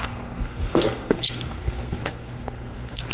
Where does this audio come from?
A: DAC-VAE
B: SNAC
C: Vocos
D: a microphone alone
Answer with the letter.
B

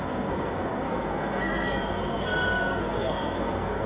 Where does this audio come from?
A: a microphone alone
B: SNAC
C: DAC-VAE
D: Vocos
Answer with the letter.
B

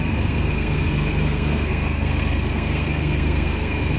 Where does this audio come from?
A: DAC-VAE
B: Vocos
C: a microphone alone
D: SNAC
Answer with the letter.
D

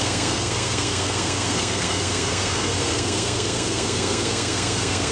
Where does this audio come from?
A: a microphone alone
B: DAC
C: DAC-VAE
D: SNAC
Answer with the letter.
D